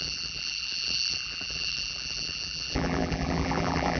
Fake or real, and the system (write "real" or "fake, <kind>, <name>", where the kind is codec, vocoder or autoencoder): fake, vocoder, BigVGAN v2